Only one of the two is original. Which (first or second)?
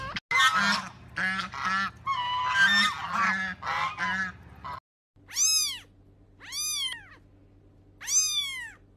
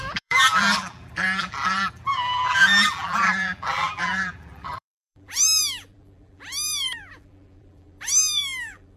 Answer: first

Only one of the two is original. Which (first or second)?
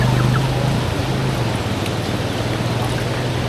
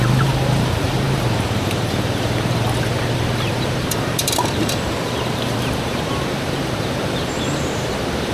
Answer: first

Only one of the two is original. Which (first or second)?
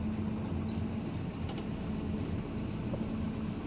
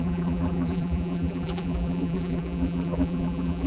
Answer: first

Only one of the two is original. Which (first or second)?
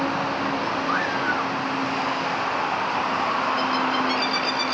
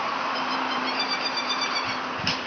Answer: first